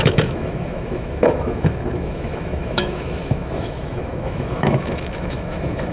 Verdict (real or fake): fake